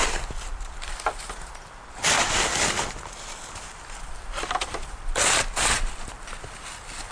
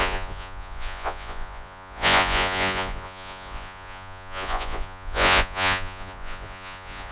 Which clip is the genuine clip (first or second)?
first